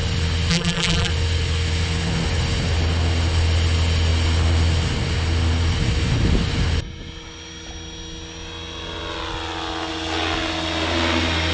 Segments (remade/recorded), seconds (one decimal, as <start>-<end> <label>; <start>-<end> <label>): 0.0-0.5 recorded; 0.5-1.1 remade; 1.1-11.5 recorded